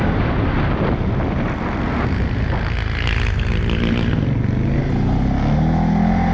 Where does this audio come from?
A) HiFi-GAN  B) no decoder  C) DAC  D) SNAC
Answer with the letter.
B